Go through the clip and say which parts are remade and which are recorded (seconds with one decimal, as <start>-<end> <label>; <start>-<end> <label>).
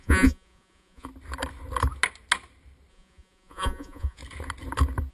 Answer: 0.0-1.1 remade; 1.1-2.9 recorded; 2.9-4.2 remade; 4.2-5.1 recorded